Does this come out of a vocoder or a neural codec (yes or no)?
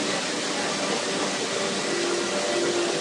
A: no